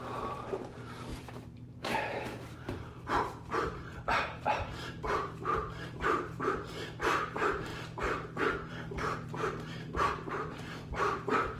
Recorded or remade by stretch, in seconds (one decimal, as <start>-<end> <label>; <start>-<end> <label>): 0.0-7.7 remade; 7.7-8.7 recorded; 8.7-11.6 remade